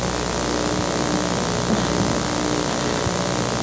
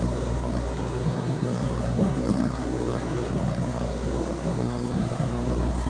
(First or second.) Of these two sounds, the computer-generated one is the second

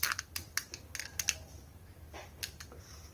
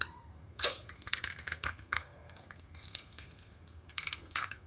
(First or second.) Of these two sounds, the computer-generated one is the second